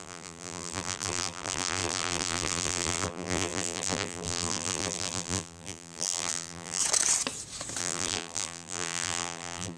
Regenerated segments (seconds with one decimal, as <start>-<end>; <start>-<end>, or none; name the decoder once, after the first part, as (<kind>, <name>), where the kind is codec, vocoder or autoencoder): 0.0-6.8 (vocoder, BigVGAN v2); 7.8-9.8